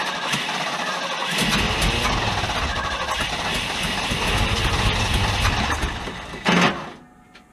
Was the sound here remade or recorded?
recorded